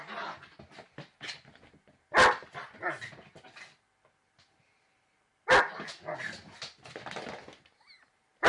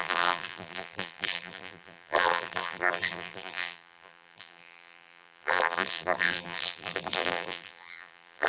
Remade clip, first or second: second